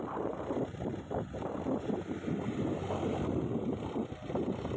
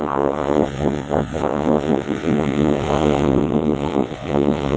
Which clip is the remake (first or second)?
second